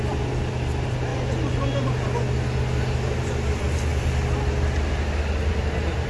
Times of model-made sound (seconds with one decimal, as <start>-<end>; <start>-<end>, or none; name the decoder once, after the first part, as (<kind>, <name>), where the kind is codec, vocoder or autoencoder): none

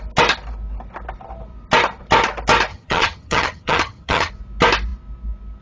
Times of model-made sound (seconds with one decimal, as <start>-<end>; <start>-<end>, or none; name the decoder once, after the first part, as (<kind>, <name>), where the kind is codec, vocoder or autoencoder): 2.7-4.3 (vocoder, HiFi-GAN)

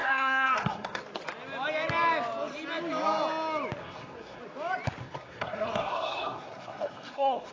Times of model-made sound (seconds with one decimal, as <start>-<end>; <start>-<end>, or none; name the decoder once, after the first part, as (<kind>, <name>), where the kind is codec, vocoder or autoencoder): 0.0-1.0 (codec, SNAC); 3.8-4.4; 5.0-7.5

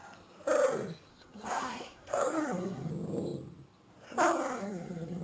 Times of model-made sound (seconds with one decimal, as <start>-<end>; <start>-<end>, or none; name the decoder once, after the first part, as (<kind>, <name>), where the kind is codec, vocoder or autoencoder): 1.1-2.9 (codec, SNAC); 4.6-5.2

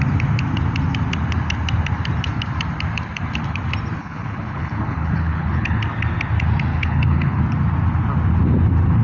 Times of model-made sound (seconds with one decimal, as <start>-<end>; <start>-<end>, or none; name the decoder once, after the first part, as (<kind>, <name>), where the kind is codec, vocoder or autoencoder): 4.0-5.8 (codec, HILCodec); 6.7-7.4

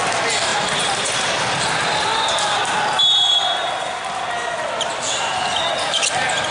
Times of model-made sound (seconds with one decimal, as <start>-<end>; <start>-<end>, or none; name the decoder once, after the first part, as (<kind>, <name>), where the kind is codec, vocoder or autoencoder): 0.5-1.3 (vocoder, BigVGAN v2)

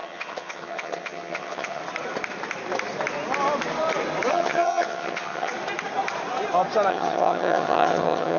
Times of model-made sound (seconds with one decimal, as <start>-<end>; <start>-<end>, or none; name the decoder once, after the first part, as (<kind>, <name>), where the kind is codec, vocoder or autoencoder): 0.0-1.8 (vocoder, HiFi-GAN); 4.3-5.5; 6.9-8.4

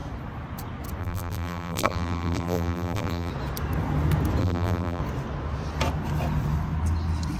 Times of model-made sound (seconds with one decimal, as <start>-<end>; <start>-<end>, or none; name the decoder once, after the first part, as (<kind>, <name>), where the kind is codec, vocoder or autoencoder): 1.0-3.3 (vocoder, BigVGAN v2); 4.4-5.0